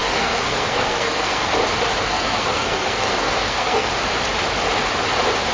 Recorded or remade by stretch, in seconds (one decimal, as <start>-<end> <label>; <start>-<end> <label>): 0.0-1.5 remade; 1.5-2.0 recorded; 2.0-3.9 remade; 3.9-5.5 recorded